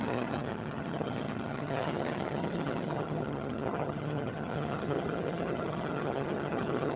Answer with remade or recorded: remade